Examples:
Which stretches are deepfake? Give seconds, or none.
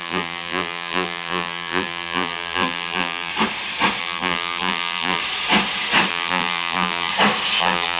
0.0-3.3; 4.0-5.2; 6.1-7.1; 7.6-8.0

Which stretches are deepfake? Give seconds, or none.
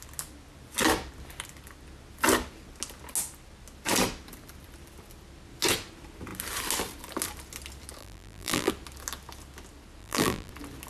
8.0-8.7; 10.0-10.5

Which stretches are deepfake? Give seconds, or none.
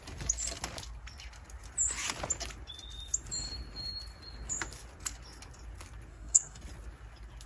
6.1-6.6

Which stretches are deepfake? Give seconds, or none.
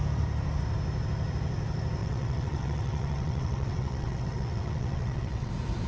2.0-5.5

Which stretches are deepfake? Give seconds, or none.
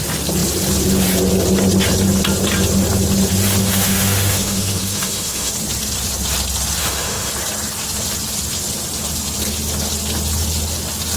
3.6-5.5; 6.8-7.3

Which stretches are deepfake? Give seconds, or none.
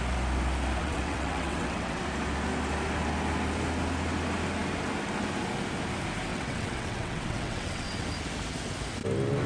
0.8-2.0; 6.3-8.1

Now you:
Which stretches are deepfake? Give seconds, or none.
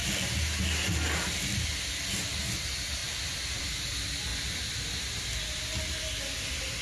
3.0-3.6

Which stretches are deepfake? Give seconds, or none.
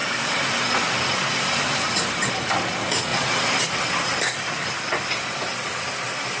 none